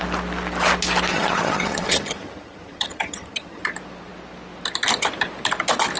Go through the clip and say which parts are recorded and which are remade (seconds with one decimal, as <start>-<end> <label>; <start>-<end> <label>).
0.0-1.1 recorded; 1.1-3.6 remade; 3.6-6.0 recorded